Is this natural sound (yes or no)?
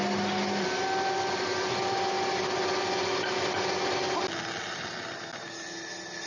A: yes